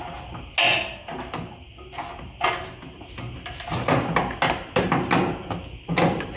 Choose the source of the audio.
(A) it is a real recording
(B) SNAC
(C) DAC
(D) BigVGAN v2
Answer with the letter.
A